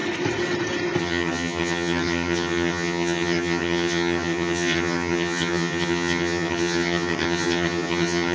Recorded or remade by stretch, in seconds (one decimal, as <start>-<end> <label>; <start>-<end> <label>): 0.0-1.0 recorded; 1.0-8.3 remade